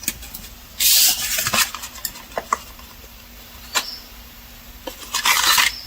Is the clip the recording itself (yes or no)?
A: yes